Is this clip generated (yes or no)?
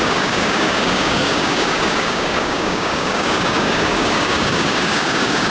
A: yes